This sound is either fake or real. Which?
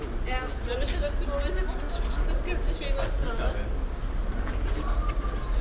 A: real